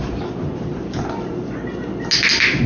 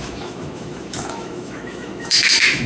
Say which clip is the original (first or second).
first